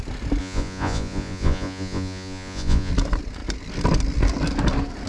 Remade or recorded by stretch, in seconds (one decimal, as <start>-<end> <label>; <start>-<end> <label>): 0.0-0.4 recorded; 0.4-2.9 remade; 2.9-5.1 recorded